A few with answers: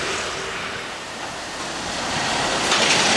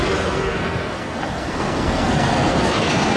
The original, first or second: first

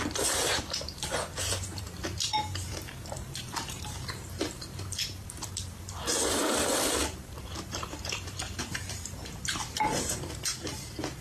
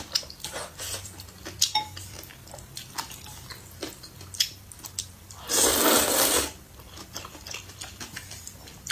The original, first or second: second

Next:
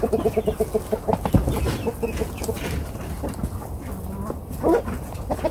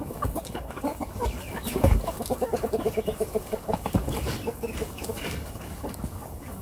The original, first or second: first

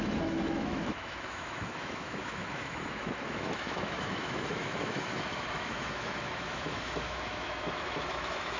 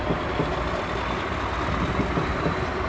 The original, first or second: second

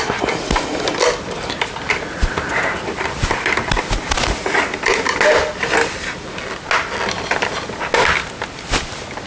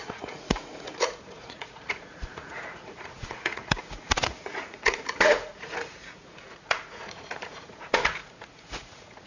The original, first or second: first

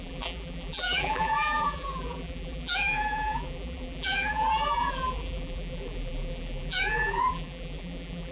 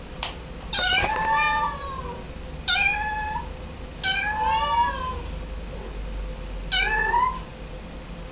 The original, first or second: second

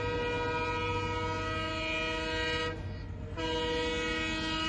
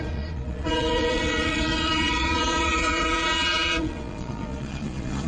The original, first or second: first